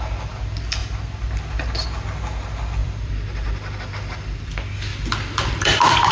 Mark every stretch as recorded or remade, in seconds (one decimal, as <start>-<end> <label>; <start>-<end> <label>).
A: 0.0-2.8 recorded; 2.8-3.9 remade; 3.9-4.9 recorded; 4.9-6.1 remade